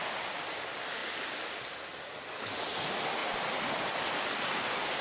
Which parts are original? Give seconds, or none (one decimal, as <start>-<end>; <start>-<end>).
0.0-5.0